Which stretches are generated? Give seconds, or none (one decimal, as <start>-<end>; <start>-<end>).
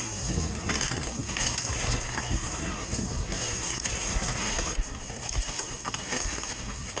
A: 0.0-7.0